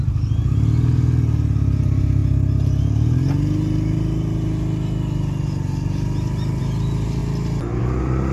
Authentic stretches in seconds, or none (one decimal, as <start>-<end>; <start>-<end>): 0.0-8.3